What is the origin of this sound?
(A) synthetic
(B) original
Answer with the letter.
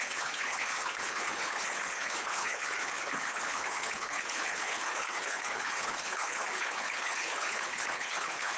A